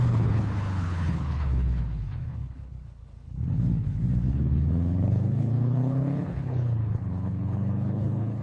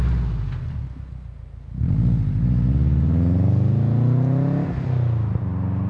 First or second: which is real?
second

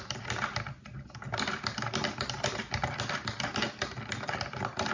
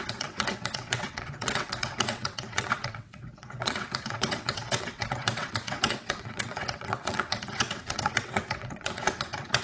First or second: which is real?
first